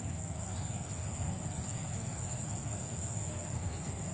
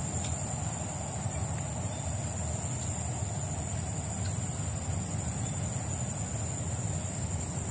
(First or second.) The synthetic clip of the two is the first